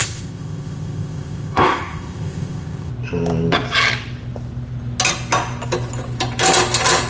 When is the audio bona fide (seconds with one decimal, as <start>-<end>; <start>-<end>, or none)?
2.9-7.1